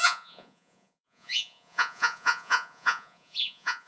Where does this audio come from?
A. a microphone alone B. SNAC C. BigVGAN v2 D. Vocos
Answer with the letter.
D